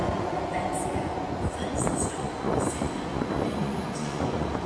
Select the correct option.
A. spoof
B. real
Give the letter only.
A